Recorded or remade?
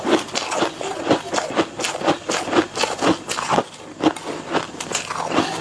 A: recorded